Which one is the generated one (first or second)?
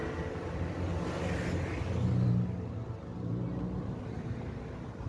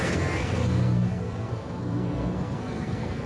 second